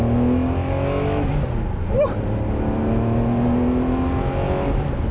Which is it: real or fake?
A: real